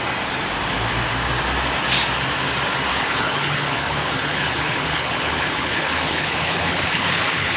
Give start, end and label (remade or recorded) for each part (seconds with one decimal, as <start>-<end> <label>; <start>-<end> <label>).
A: 0.0-2.9 recorded; 2.9-7.6 remade